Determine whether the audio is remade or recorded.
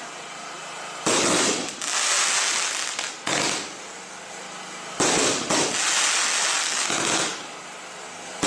recorded